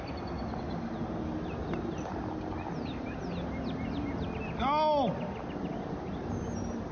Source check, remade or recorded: recorded